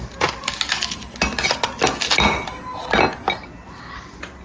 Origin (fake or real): real